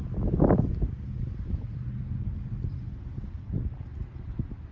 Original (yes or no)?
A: yes